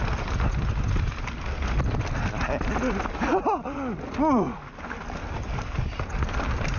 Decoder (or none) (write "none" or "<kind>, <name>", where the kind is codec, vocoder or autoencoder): none